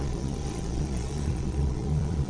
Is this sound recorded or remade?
remade